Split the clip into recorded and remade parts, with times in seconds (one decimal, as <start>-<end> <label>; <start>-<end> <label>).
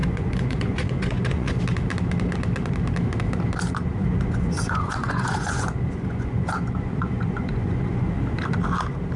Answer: 0.0-1.6 remade; 1.6-3.9 recorded; 3.9-8.1 remade; 8.1-9.2 recorded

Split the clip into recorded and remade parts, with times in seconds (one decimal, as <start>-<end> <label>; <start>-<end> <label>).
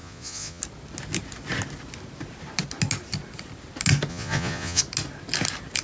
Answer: 0.0-0.6 remade; 0.6-4.1 recorded; 4.1-4.8 remade; 4.8-5.8 recorded